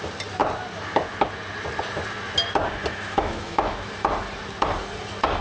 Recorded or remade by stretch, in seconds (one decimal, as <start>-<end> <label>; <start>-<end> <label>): 0.0-2.9 recorded; 2.9-3.9 remade; 3.9-5.4 recorded